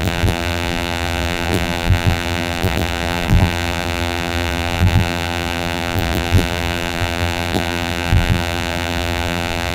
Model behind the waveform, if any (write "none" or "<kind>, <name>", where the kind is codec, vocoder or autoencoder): vocoder, BigVGAN v2